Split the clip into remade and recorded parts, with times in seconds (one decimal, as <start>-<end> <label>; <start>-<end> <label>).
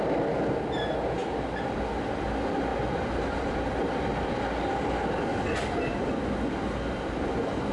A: 0.0-7.7 recorded